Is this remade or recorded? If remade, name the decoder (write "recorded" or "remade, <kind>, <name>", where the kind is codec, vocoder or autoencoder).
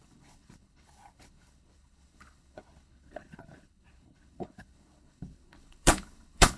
remade, codec, HILCodec